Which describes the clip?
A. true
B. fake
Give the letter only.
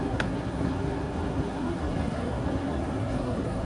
B